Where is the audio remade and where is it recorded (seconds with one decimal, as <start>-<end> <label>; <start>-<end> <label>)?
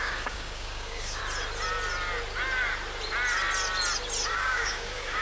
0.0-1.2 remade; 1.2-4.3 recorded; 4.3-5.2 remade